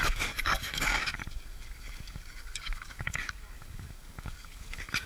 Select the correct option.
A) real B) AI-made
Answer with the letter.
B